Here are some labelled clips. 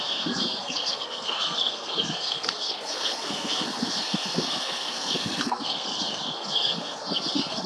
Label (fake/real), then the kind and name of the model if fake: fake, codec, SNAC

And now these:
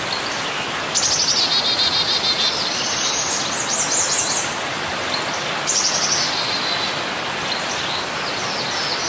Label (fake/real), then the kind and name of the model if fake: real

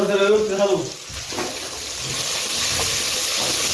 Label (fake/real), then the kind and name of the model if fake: real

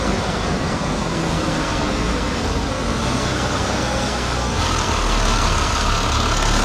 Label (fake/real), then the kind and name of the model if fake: fake, codec, SNAC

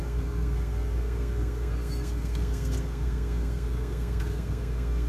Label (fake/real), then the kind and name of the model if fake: fake, codec, SNAC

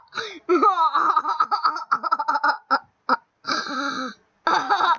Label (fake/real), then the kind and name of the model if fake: real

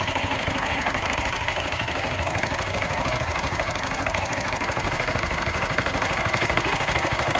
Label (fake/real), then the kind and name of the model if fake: fake, codec, SNAC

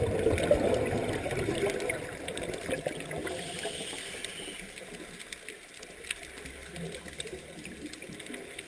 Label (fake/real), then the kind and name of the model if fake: real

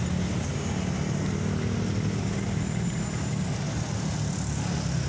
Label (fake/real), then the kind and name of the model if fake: real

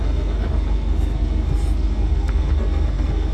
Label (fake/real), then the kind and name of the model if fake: fake, codec, SNAC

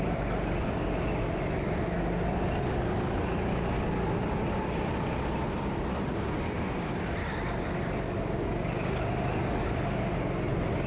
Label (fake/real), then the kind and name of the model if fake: real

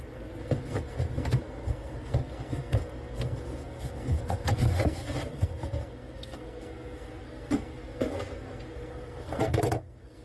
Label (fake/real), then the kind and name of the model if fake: fake, codec, SNAC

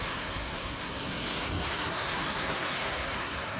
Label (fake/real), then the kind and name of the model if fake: fake, codec, SNAC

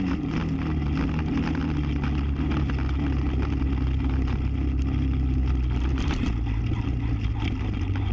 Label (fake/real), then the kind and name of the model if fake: real